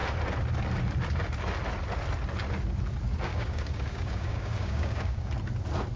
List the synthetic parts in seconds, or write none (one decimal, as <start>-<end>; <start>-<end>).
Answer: 3.3-5.3